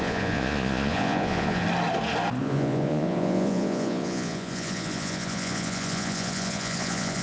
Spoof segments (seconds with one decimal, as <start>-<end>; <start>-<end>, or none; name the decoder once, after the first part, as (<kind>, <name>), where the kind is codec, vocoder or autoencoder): 0.0-1.6 (vocoder, Vocos); 2.4-7.2